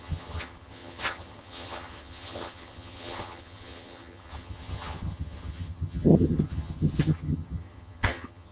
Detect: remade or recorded remade